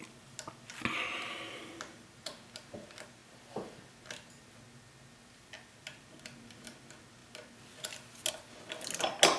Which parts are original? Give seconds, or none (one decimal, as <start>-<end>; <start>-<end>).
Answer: 0.0-9.4

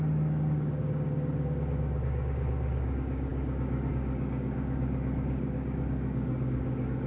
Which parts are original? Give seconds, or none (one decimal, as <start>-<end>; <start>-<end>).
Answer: none

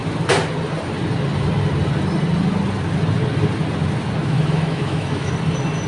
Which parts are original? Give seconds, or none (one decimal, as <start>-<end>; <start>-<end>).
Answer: 0.0-4.2; 5.3-5.9

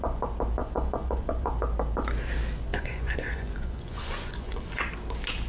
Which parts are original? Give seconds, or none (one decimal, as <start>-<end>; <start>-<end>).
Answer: 0.0-0.6; 1.5-2.7; 4.9-5.5

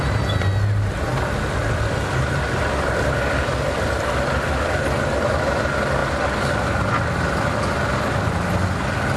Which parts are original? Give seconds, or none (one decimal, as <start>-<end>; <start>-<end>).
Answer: 0.0-9.2

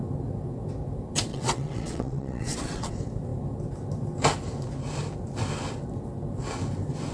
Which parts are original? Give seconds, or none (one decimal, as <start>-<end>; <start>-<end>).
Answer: 0.0-1.3; 2.9-7.1